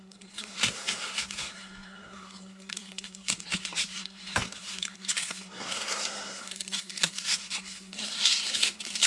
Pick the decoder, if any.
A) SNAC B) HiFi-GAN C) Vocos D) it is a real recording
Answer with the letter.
A